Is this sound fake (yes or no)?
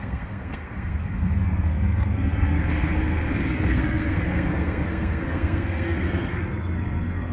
yes